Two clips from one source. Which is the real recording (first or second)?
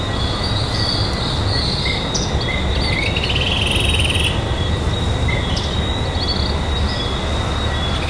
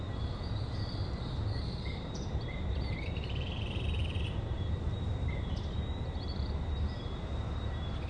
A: first